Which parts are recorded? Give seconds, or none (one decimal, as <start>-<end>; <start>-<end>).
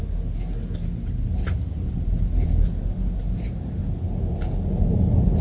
0.0-3.2; 3.8-5.0